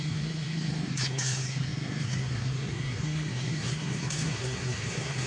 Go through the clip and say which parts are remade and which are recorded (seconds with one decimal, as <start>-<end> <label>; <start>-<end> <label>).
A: 0.0-5.3 remade